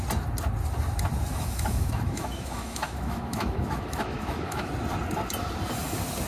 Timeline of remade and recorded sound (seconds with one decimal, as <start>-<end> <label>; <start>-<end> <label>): 0.0-1.3 recorded; 1.3-4.7 remade; 4.7-6.3 recorded